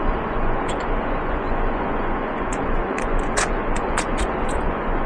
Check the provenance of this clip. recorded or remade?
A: remade